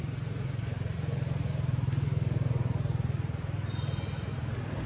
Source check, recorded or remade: recorded